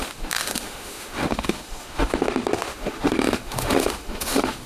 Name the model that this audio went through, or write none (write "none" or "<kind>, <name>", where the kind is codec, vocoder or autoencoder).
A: autoencoder, DAC-VAE